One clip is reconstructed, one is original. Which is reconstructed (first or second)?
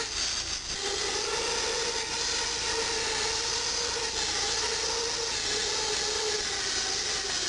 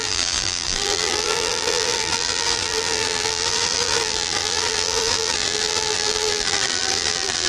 second